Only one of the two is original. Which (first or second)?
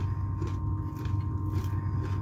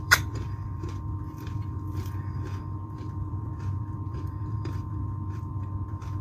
first